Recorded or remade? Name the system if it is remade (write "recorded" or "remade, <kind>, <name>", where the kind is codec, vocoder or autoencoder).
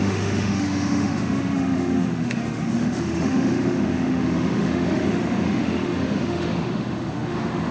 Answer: remade, autoencoder, DAC-VAE